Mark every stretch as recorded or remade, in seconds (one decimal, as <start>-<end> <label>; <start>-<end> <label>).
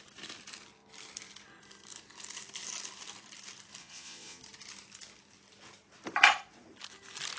0.0-3.8 recorded; 3.8-4.4 remade; 4.4-7.4 recorded